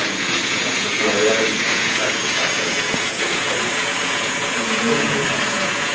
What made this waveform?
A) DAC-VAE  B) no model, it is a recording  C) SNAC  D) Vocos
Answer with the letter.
D